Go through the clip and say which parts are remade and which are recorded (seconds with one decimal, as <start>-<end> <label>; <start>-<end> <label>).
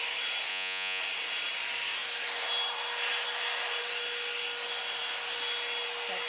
0.0-0.5 recorded; 0.5-1.0 remade; 1.0-6.3 recorded